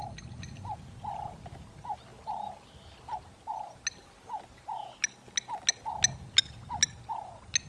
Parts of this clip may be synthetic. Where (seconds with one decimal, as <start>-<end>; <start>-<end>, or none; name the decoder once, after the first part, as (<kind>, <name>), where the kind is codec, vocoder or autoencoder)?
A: none